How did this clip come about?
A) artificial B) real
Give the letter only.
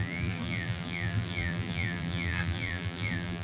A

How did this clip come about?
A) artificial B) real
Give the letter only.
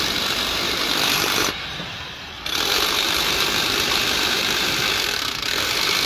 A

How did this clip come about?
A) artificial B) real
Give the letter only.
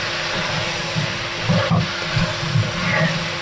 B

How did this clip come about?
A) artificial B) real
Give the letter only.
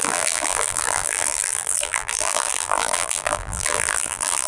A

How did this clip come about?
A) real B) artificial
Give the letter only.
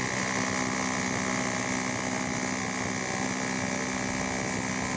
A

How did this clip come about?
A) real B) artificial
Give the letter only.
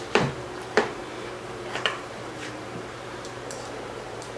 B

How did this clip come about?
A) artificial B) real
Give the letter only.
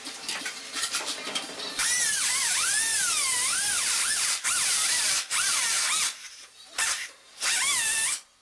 A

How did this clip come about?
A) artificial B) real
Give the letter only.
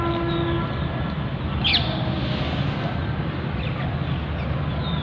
B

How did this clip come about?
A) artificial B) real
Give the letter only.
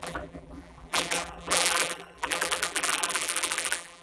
A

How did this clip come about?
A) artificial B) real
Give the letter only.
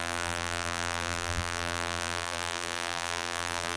A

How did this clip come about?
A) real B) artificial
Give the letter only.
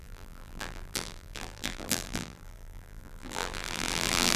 B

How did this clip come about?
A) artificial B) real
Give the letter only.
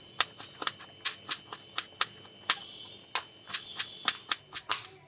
B